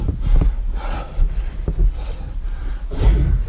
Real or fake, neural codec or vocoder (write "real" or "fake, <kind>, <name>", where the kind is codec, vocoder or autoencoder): real